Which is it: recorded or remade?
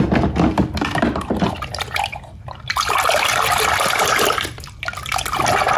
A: recorded